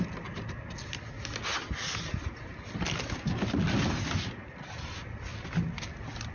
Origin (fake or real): real